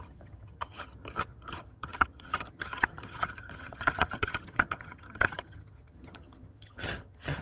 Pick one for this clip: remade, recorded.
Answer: remade